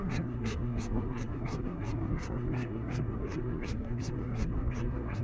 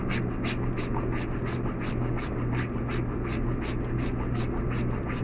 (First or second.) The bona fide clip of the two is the second